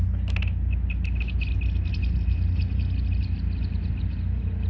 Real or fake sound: real